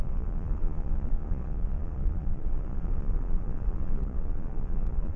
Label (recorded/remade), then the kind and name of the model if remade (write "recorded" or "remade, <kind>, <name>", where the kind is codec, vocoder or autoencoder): remade, vocoder, Vocos